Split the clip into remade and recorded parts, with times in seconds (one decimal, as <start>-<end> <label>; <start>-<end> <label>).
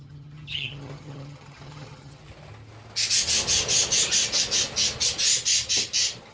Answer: 0.0-2.2 remade; 2.2-6.3 recorded